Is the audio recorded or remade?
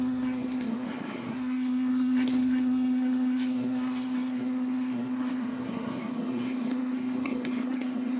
remade